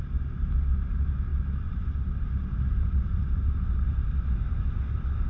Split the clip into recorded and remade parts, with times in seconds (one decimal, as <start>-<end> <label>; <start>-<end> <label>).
0.0-5.3 recorded